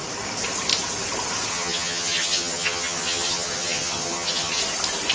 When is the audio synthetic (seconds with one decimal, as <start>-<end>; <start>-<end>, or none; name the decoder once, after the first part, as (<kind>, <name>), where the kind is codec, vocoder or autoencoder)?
1.5-4.6 (vocoder, HiFi-GAN)